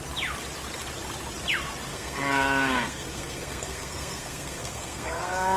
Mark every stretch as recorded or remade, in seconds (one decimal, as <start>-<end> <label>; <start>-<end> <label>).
0.0-1.9 recorded; 1.9-5.6 remade